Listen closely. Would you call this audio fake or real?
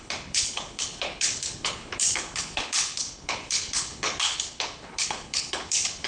fake